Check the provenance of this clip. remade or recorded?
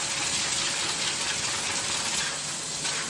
recorded